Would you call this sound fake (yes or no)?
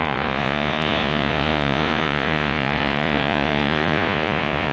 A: yes